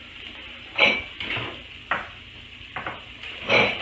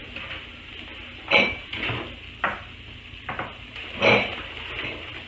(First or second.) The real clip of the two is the second